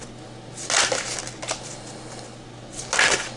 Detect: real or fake real